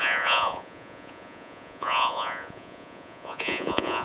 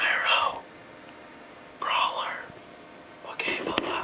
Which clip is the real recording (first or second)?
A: second